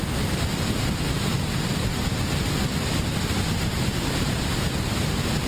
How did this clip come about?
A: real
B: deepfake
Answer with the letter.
A